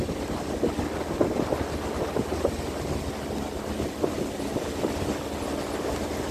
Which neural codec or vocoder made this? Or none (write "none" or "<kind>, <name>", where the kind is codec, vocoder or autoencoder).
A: none